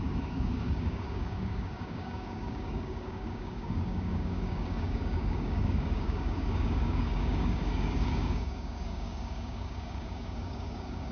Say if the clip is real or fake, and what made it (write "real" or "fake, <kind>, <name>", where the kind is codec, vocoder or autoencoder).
fake, codec, DAC